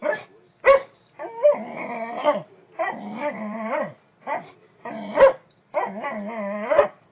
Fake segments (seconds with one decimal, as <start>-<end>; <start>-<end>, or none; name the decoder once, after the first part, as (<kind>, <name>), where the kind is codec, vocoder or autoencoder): 0.8-5.1 (vocoder, BigVGAN v2)